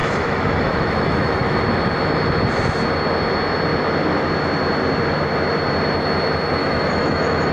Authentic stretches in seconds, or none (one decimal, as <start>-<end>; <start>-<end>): 1.6-6.6